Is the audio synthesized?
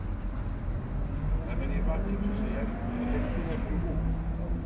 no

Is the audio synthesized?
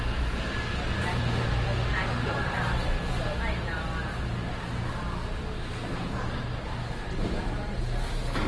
no